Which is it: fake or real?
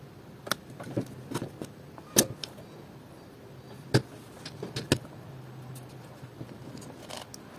real